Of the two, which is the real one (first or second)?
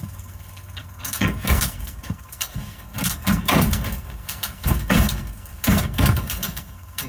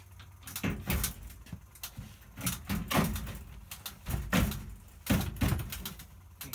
second